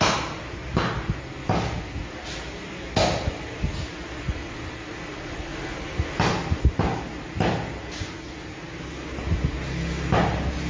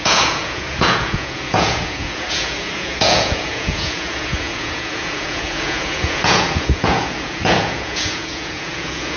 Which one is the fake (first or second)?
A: second